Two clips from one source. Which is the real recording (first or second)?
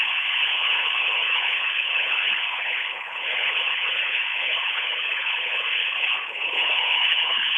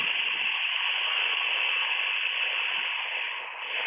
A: second